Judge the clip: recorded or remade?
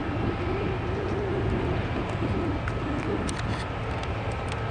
recorded